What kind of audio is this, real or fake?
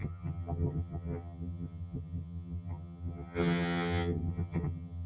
fake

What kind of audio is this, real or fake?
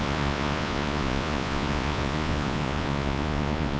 fake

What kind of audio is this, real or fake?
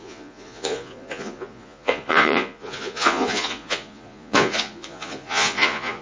fake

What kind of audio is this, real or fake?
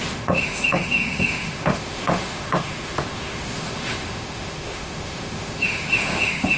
fake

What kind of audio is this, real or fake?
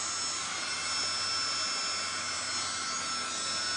real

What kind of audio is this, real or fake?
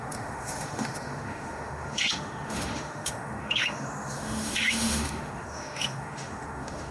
fake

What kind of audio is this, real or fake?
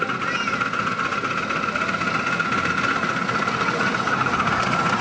real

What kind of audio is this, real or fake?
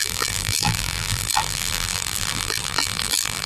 fake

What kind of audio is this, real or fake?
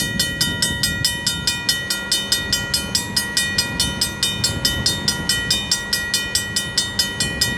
real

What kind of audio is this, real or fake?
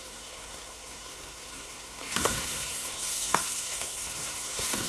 fake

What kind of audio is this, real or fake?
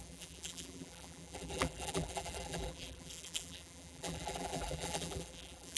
fake